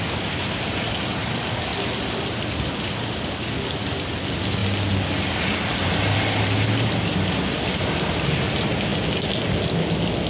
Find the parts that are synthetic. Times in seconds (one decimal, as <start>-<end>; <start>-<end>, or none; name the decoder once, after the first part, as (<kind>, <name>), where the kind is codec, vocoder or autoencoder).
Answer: none